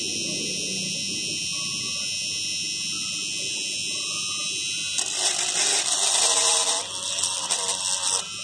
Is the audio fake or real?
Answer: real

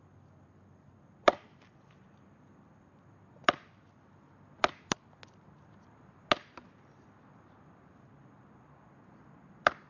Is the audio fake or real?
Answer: real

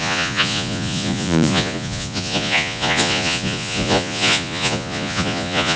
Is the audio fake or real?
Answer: fake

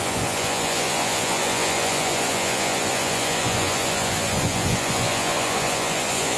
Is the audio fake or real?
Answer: fake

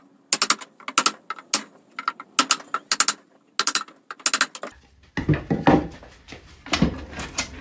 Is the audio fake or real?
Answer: real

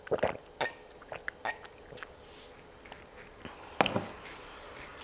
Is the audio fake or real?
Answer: real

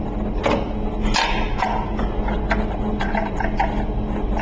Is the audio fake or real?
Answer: real